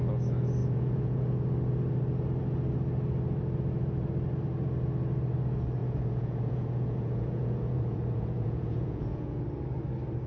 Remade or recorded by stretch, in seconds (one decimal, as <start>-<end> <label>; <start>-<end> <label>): 0.0-0.6 recorded; 0.6-1.2 remade; 1.2-5.8 recorded; 5.8-9.4 remade; 9.4-10.3 recorded

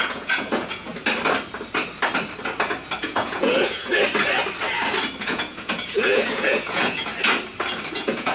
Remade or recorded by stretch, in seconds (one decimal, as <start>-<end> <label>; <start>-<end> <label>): 0.0-0.9 remade; 0.9-3.0 recorded; 3.0-3.9 remade; 3.9-5.2 recorded; 5.2-7.1 remade; 7.1-7.9 recorded; 7.9-8.3 remade